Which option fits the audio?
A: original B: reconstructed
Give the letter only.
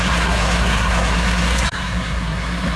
B